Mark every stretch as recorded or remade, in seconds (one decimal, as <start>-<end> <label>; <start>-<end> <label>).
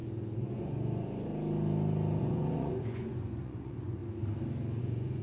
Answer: 0.0-1.3 remade; 1.3-2.2 recorded; 2.2-4.0 remade; 4.0-4.8 recorded; 4.8-5.2 remade